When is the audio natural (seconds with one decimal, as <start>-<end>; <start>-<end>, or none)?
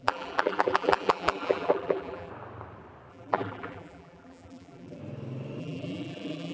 2.3-3.1; 5.0-5.6